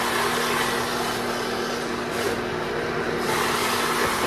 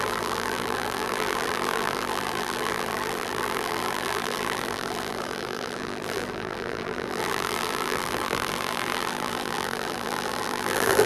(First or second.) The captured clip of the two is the first